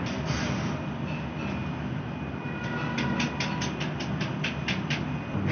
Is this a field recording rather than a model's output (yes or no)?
yes